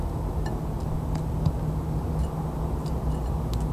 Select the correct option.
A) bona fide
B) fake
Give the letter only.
A